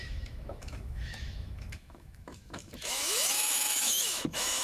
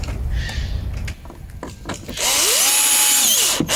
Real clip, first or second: second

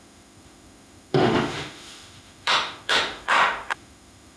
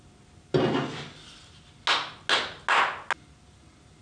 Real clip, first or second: second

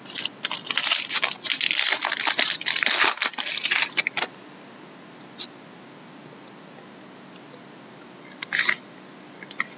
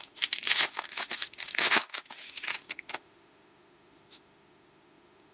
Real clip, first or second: first